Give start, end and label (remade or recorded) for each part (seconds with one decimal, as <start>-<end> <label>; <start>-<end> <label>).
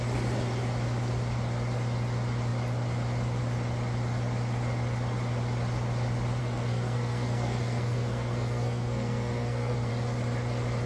0.0-6.4 recorded; 6.4-9.9 remade; 9.9-10.9 recorded